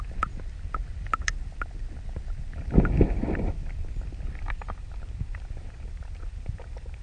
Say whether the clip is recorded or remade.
recorded